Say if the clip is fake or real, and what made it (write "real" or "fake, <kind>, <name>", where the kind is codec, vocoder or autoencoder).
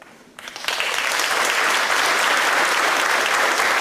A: fake, vocoder, BigVGAN v2